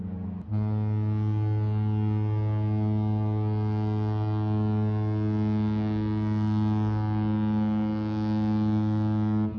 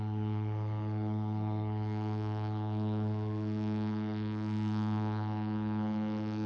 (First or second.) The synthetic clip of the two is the second